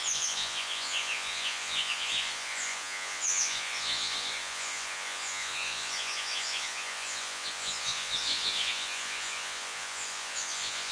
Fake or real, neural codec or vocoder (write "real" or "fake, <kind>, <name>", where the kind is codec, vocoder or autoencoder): fake, vocoder, Vocos